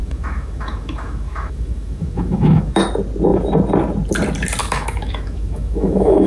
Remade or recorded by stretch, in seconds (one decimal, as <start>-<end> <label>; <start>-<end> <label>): 0.0-2.8 remade; 2.8-4.6 recorded; 4.6-6.3 remade